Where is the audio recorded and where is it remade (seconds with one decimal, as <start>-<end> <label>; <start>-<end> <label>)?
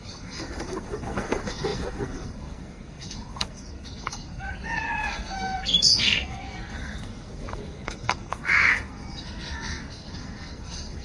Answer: 0.0-11.0 remade